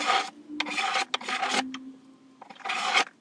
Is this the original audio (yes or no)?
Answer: yes